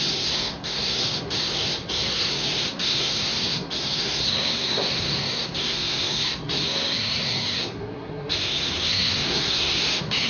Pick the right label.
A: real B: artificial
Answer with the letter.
B